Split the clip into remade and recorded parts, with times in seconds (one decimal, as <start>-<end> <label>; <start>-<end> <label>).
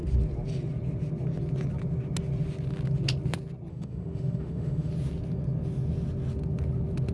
0.0-3.7 recorded; 3.7-4.9 remade; 4.9-7.1 recorded